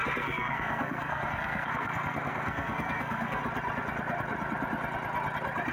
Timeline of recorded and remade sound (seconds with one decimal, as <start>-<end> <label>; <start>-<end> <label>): 0.0-3.4 remade; 3.4-5.7 recorded